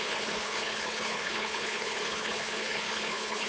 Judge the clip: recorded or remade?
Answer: remade